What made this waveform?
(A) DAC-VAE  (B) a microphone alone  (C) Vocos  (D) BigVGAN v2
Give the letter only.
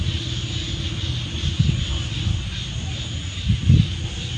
B